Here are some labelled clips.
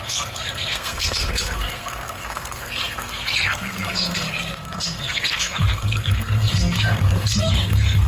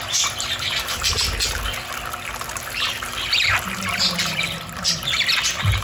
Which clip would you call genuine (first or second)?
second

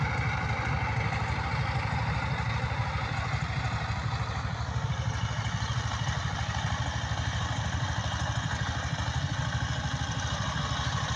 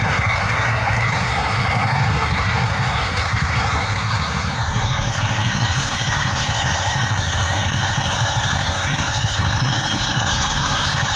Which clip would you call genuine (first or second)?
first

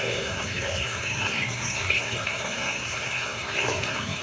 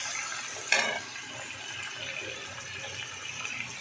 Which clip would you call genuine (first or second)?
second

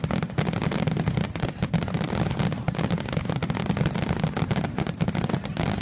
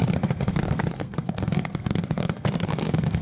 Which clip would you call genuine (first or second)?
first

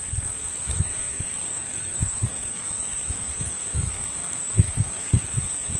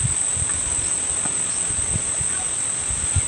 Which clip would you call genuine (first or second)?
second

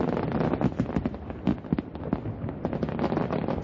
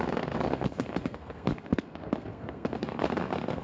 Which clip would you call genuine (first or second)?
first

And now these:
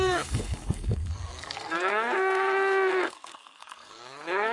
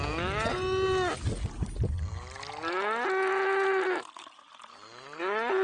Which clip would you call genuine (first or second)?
second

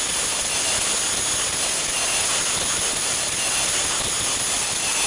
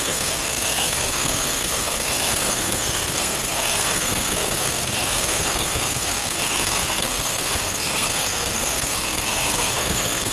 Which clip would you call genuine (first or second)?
first